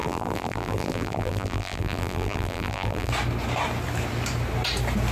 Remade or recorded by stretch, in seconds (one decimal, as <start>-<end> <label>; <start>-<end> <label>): 0.0-3.1 remade; 3.1-5.1 recorded